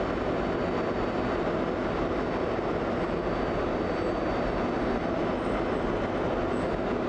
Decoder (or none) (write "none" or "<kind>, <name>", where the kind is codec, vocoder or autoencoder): none